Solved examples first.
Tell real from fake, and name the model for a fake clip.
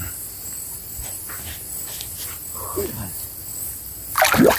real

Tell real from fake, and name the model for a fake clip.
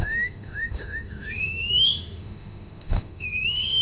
fake, autoencoder, DAC-VAE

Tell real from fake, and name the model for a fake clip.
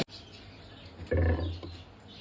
real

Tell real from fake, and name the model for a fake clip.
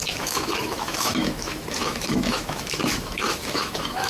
fake, autoencoder, DAC-VAE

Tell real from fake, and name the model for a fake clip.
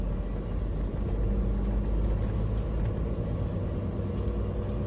real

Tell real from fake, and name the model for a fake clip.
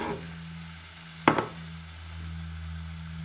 real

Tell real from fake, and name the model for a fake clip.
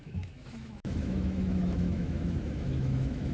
fake, autoencoder, DAC-VAE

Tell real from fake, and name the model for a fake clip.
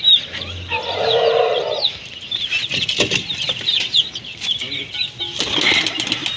real